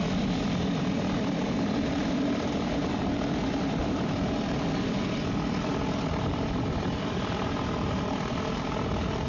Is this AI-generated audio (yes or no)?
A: no